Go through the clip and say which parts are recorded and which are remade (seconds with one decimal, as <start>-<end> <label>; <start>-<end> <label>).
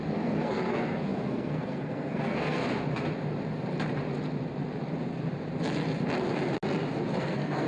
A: 0.0-2.6 remade; 2.6-7.2 recorded; 7.2-7.7 remade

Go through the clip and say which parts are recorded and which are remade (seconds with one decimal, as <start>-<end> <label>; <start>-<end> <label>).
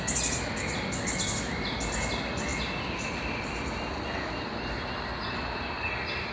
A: 0.0-6.3 recorded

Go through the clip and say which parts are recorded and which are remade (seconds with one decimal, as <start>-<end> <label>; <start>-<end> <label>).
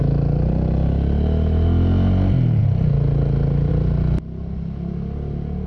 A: 0.0-5.7 recorded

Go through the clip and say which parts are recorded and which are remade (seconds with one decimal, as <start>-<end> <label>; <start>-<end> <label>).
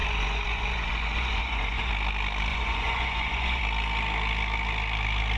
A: 0.0-1.9 remade; 1.9-2.5 recorded; 2.5-3.6 remade; 3.6-5.4 recorded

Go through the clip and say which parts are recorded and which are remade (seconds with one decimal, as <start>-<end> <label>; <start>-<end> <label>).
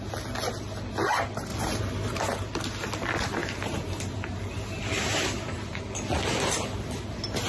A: 0.0-1.5 recorded; 1.5-2.2 remade; 2.2-3.4 recorded; 3.4-5.8 remade; 5.8-7.5 recorded